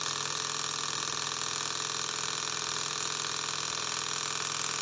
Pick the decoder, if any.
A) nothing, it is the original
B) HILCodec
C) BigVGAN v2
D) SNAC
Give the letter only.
A